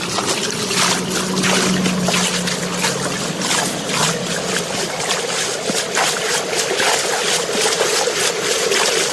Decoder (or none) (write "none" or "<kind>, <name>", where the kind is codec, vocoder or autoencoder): none